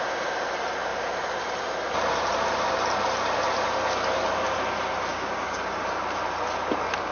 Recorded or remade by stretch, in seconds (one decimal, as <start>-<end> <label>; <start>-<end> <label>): 0.0-5.1 recorded; 5.1-5.8 remade; 5.8-7.1 recorded